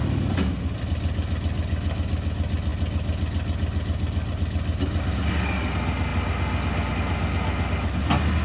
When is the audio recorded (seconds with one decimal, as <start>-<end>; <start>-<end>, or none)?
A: 0.0-8.4